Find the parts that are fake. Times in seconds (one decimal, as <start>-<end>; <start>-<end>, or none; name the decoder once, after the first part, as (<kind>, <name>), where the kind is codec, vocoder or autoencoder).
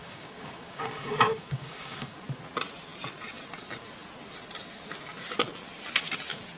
0.0-2.2 (codec, DAC)